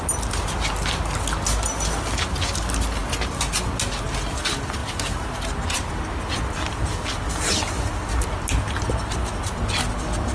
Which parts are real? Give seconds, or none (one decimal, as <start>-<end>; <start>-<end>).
0.0-4.8; 5.9-10.3